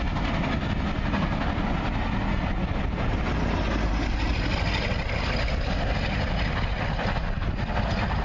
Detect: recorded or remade recorded